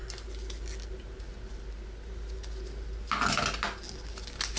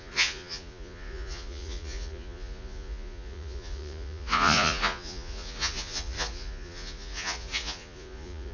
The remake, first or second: second